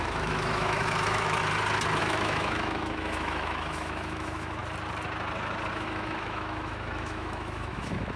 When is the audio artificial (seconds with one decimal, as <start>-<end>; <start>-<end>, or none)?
0.0-1.4; 2.0-4.6; 5.7-8.2

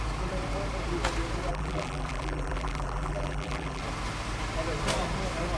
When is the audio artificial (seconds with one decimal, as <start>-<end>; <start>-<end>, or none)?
1.5-3.8